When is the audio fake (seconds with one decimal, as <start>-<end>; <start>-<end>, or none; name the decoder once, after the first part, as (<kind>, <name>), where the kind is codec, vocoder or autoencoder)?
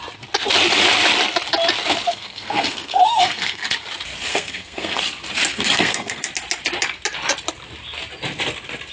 2.1-3.6 (codec, SNAC); 4.3-5.0; 5.5-6.3